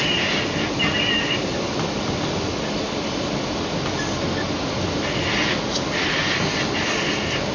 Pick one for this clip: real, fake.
real